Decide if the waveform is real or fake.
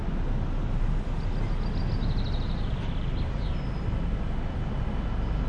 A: real